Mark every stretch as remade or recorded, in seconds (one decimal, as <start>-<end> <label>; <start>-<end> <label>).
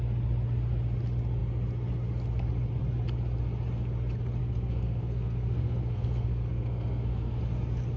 0.0-4.4 recorded; 4.4-7.4 remade; 7.4-8.0 recorded